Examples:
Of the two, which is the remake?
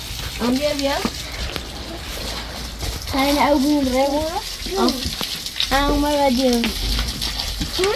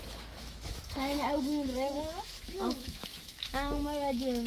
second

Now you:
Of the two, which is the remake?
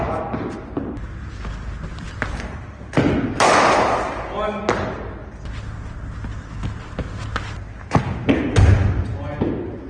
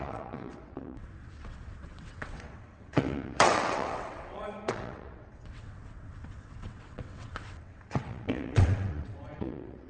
second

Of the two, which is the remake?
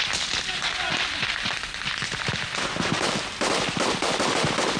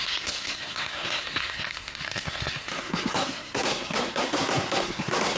second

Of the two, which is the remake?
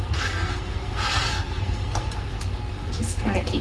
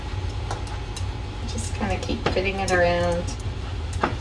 first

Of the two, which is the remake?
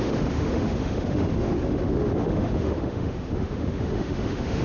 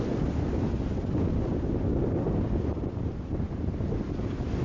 first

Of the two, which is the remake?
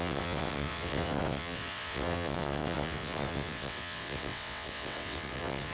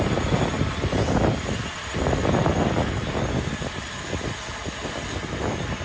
first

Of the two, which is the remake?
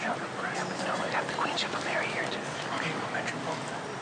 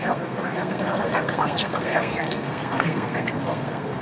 second